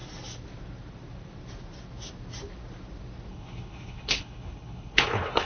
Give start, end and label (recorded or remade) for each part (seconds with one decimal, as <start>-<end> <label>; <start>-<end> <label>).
0.0-3.3 recorded; 3.3-5.5 remade